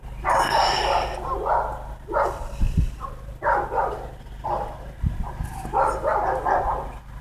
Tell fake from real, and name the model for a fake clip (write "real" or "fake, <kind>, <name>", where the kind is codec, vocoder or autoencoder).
real